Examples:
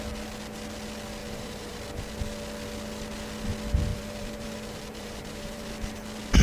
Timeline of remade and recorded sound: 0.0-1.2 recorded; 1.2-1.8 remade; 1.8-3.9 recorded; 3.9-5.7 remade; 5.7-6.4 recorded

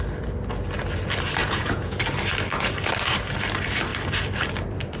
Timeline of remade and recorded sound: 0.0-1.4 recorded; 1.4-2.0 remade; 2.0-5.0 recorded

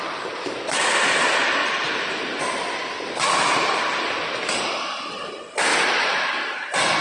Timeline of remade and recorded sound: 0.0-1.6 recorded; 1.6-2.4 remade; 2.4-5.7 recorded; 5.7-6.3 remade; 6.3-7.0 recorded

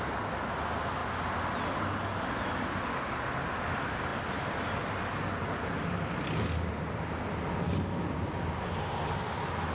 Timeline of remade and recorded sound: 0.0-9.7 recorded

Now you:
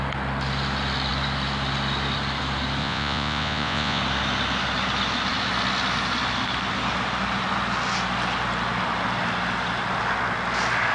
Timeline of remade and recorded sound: 0.0-2.8 recorded; 2.8-4.0 remade; 4.0-10.9 recorded

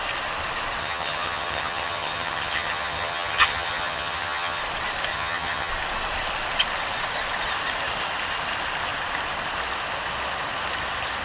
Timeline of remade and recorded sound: 0.0-0.8 recorded; 0.8-4.6 remade; 4.6-5.1 recorded; 5.1-5.7 remade; 5.7-11.2 recorded

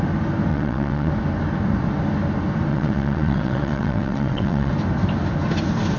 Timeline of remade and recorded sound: 0.0-0.5 recorded; 0.5-1.1 remade; 1.1-2.7 recorded; 2.7-4.7 remade; 4.7-6.0 recorded

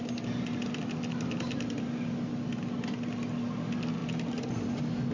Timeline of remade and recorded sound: 0.0-5.1 recorded